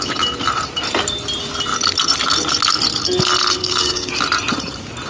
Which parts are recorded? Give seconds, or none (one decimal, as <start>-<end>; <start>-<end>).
0.0-3.6; 4.1-5.1